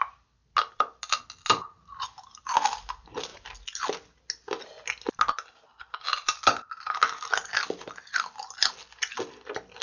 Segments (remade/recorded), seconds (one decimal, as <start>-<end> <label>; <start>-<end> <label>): 0.0-9.8 recorded